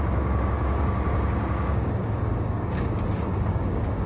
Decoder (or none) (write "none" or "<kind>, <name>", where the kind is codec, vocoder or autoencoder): codec, DAC